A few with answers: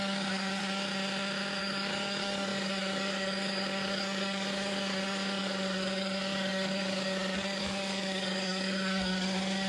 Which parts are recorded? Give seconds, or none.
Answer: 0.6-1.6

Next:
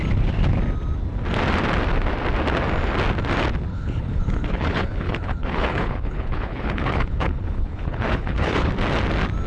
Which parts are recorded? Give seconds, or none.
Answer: 0.0-3.7; 8.7-9.5

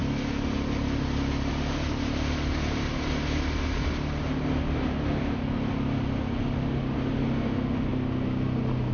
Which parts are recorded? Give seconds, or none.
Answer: 0.0-8.9

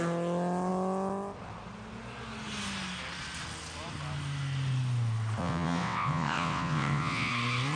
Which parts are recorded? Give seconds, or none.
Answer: 0.0-5.4; 7.3-7.8

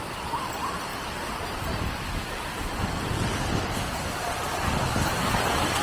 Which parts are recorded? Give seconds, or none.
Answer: 0.0-5.8

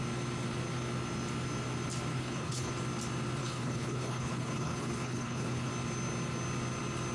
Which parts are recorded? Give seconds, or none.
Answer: 0.0-2.1; 2.7-3.4; 5.7-7.1

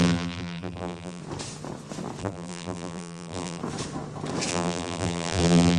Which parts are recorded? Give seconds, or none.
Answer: 1.2-2.2; 3.6-4.5